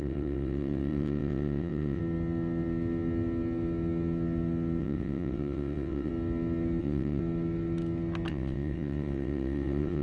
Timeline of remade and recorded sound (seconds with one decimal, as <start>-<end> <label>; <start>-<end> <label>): 0.0-2.0 remade; 2.0-4.8 recorded; 4.8-6.1 remade; 6.1-6.8 recorded; 6.8-7.2 remade; 7.2-8.3 recorded; 8.3-10.0 remade